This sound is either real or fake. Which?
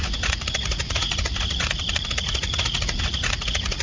fake